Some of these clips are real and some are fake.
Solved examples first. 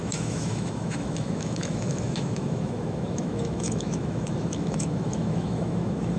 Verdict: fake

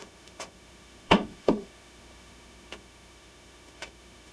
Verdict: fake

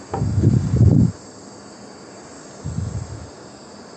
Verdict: real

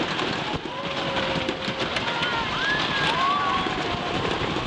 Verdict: real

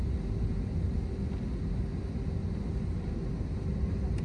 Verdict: real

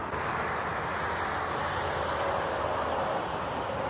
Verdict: real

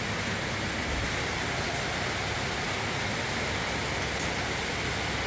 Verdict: real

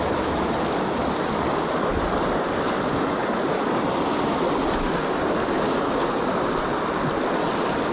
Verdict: real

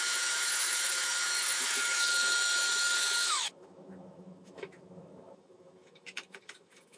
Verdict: fake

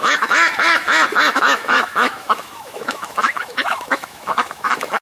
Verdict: fake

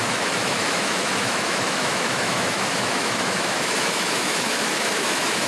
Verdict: fake